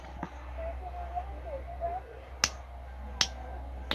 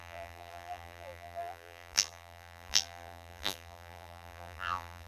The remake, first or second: second